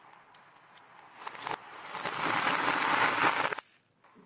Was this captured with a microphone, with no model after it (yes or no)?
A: yes